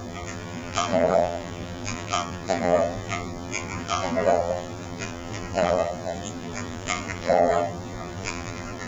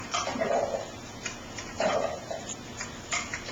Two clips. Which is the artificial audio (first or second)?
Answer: first